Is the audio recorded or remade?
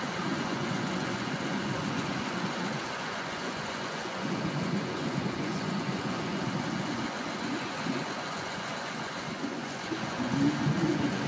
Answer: remade